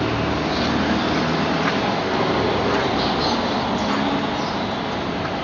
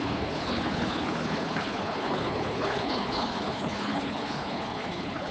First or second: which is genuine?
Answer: first